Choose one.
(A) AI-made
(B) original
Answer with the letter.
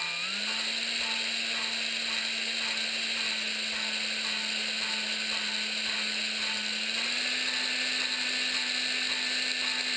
B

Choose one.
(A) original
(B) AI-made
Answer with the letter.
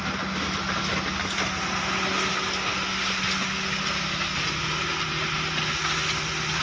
A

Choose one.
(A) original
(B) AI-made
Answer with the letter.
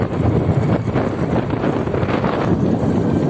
A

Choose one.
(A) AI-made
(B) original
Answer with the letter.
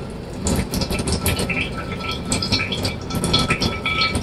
B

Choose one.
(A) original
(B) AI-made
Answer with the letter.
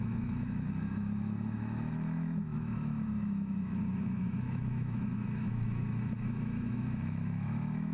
B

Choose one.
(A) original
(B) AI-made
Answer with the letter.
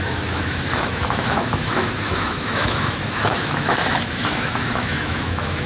B